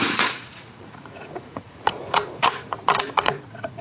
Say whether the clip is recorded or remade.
remade